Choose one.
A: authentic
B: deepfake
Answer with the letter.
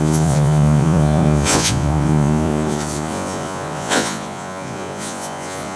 B